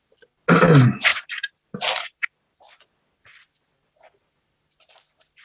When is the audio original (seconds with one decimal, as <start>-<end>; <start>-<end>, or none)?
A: 0.0-1.1; 2.6-5.4